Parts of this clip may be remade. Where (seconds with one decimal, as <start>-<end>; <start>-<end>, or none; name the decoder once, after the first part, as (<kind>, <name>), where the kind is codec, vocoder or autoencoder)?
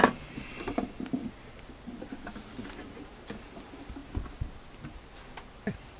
none